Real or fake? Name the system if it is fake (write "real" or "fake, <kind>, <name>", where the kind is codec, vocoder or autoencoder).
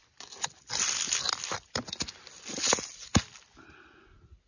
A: real